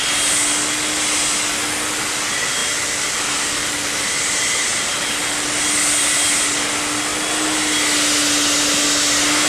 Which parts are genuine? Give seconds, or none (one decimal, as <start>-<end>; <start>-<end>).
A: 0.0-9.5